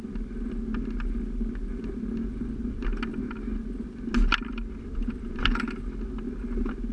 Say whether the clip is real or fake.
real